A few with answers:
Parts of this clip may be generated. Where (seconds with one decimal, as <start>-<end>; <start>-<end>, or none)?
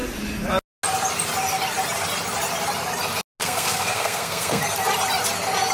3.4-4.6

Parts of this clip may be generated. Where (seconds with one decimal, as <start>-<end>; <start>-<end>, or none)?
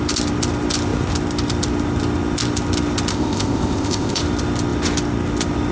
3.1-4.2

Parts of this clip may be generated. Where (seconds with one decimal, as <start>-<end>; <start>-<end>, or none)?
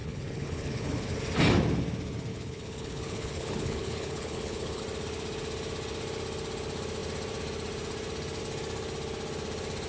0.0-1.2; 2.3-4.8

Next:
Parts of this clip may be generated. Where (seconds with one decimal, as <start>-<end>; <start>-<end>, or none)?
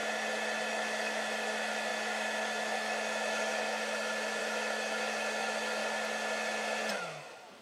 0.7-5.8; 6.9-7.6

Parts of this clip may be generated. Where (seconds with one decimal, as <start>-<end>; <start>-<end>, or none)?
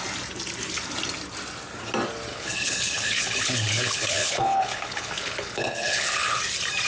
2.3-6.4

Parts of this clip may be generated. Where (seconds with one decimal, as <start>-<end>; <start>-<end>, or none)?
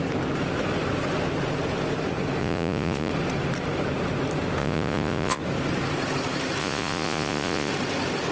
2.4-3.1; 4.6-5.4; 6.6-7.7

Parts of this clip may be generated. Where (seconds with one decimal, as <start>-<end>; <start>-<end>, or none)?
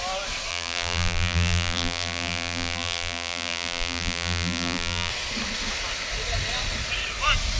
0.5-5.1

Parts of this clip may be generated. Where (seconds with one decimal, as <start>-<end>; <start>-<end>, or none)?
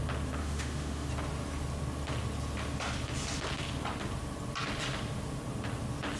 0.4-1.1